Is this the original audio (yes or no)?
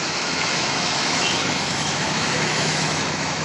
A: no